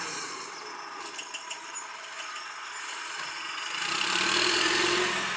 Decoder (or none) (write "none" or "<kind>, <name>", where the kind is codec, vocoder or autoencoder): vocoder, BigVGAN v2